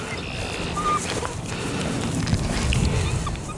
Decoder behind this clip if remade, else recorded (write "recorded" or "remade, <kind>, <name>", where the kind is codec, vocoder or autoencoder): recorded